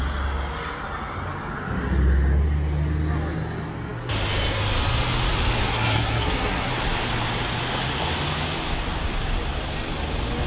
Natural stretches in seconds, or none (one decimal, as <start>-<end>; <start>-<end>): 0.0-5.7; 6.7-10.5

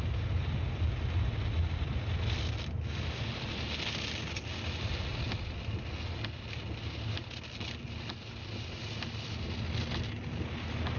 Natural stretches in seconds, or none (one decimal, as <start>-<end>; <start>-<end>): 0.0-11.0